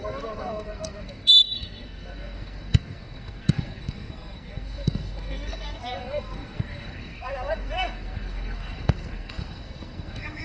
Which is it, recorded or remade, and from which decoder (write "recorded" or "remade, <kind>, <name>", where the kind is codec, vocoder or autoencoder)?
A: remade, codec, SNAC